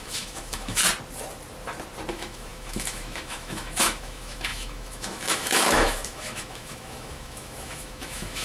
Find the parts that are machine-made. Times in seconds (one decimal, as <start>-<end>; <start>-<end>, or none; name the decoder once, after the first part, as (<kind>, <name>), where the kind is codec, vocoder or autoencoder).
0.0-0.8 (autoencoder, DAC-VAE); 2.1-8.4